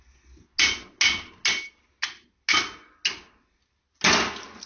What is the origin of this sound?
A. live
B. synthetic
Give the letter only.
A